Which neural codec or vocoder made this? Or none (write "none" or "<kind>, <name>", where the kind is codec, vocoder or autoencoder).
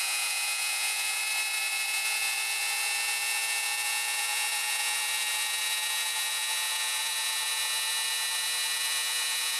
vocoder, Vocos